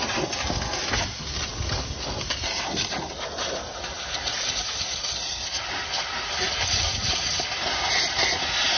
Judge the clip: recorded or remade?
recorded